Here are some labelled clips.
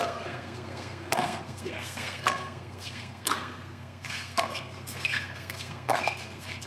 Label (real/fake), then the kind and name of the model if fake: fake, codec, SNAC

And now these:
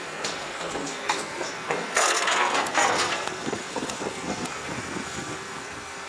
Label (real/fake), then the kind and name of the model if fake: fake, codec, SNAC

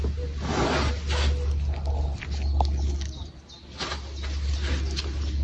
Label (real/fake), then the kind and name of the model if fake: real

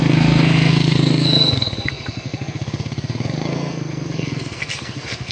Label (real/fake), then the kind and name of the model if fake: fake, codec, SNAC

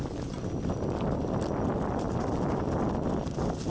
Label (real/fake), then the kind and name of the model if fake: real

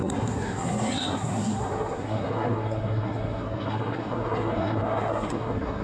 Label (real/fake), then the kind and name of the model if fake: fake, codec, SNAC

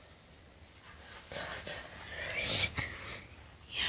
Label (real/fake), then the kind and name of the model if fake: real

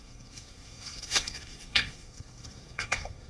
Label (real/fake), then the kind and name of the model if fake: fake, codec, SNAC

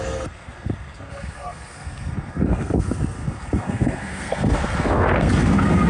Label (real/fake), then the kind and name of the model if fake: fake, codec, SNAC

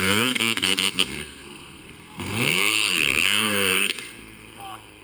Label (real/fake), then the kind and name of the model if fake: fake, codec, SNAC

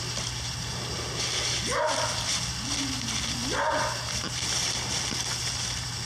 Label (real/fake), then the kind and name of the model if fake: real